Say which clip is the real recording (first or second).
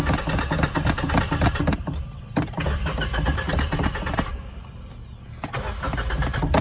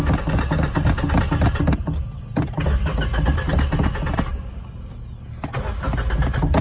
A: second